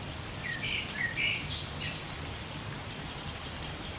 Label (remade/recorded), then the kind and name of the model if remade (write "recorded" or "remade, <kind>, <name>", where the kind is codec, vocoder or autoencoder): remade, vocoder, BigVGAN v2